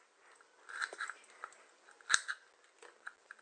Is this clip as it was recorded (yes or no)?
yes